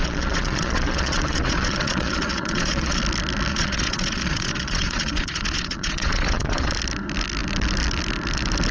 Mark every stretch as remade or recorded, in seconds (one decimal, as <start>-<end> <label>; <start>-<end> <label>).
0.0-3.0 remade; 3.0-3.5 recorded; 3.5-6.7 remade; 6.7-8.7 recorded